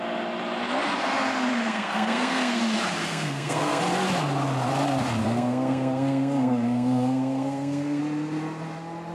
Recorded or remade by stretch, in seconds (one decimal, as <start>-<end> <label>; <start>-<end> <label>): 0.0-1.5 recorded; 1.5-2.6 remade; 2.6-3.0 recorded; 3.0-3.8 remade; 3.8-5.2 recorded; 5.2-8.0 remade; 8.0-9.1 recorded

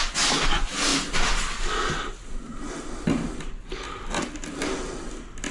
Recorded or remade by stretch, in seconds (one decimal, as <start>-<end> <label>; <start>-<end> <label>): 0.0-5.5 recorded

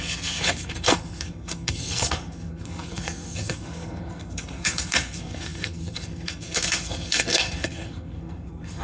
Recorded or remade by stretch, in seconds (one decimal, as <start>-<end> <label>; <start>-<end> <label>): 0.0-8.8 remade

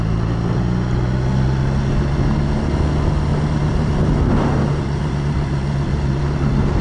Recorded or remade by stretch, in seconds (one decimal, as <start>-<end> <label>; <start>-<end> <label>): 0.0-6.8 recorded

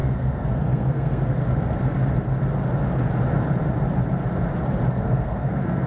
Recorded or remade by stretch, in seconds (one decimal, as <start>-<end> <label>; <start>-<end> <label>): 0.0-1.4 remade; 1.4-4.9 recorded; 4.9-5.9 remade

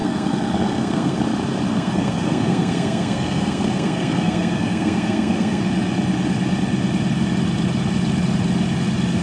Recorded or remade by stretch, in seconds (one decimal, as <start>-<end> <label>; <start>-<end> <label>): 0.0-1.2 remade; 1.2-1.7 recorded; 1.7-5.6 remade; 5.6-9.2 recorded

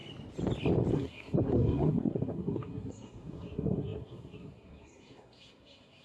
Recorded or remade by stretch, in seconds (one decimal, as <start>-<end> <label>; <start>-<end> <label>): 0.0-0.9 recorded; 0.9-6.0 remade

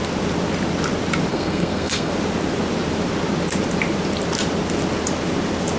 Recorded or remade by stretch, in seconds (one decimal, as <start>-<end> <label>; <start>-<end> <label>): 0.0-1.3 recorded; 1.3-2.1 remade; 2.1-5.8 recorded